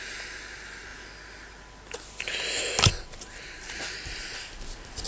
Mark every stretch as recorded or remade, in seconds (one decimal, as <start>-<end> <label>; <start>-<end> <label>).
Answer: 0.0-5.1 recorded